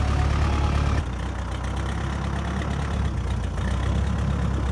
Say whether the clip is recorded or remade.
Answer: recorded